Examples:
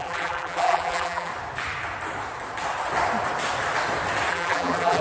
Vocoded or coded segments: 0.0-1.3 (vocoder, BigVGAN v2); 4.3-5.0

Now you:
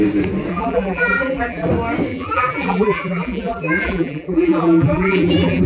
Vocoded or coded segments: 0.5-1.7 (vocoder, BigVGAN v2); 2.1-5.7